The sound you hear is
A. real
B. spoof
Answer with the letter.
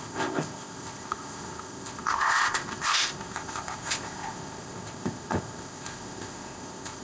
B